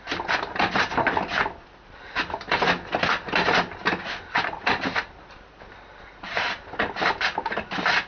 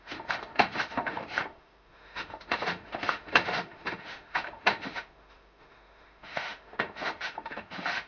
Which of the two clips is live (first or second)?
first